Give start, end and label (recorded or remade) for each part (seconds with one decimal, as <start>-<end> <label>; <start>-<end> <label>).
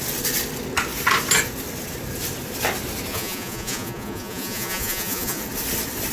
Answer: 0.0-3.1 recorded; 3.1-5.4 remade; 5.4-6.1 recorded